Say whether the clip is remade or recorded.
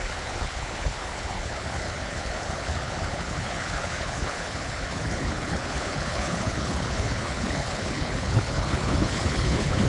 remade